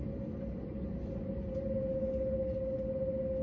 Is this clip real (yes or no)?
yes